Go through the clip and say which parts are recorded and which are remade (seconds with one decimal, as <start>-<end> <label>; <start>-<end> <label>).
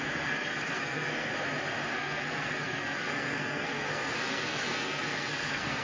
0.0-1.3 remade; 1.3-1.9 recorded; 1.9-5.8 remade